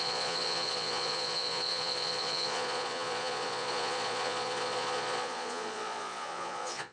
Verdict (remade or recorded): remade